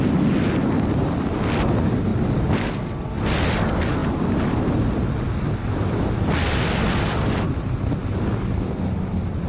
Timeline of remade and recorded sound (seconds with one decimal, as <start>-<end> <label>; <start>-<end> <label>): 0.0-9.5 recorded